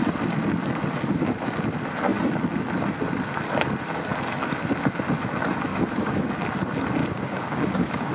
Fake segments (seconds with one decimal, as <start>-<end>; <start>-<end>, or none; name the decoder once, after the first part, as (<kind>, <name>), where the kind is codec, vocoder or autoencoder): 5.7-6.2 (codec, DAC); 7.0-8.1